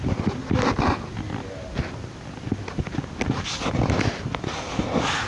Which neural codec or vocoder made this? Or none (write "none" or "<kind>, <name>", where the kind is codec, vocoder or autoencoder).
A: none